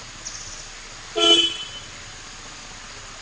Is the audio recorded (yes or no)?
yes